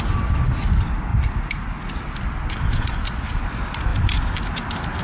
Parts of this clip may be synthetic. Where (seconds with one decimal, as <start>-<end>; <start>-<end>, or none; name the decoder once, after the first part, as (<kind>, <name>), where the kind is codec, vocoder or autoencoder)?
none